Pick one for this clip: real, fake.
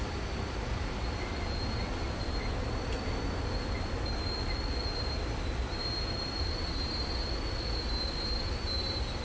real